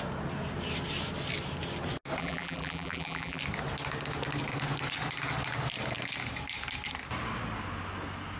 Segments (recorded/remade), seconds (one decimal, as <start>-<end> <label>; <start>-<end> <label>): 0.0-2.2 recorded; 2.2-3.4 remade; 3.4-8.4 recorded

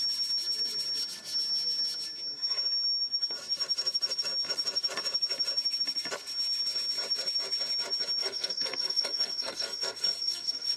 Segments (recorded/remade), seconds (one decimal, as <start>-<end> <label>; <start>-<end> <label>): 0.0-8.2 recorded; 8.2-10.8 remade

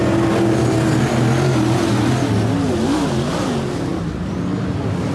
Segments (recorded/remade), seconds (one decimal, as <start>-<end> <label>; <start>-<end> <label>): 0.0-5.1 recorded